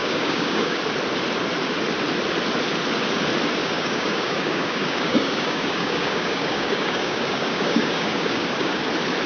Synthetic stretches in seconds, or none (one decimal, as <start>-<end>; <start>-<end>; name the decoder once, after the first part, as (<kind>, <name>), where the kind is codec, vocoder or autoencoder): 0.0-0.8 (codec, DAC); 3.6-8.8

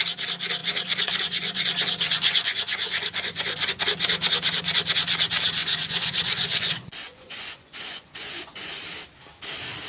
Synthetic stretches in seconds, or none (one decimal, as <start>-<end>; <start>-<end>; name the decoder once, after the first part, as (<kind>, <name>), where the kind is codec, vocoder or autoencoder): 0.6-3.8 (vocoder, Vocos); 5.6-8.7

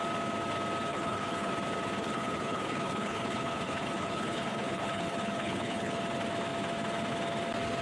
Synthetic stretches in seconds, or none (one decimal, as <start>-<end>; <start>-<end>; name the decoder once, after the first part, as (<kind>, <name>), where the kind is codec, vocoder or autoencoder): 0.9-1.5 (codec, HILCodec); 2.0-6.0

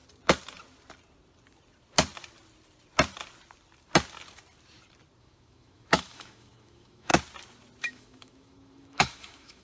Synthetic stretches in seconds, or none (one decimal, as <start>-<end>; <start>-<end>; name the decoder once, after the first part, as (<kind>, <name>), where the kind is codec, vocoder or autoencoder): 5.2-7.1 (autoencoder, DAC-VAE); 7.8-9.6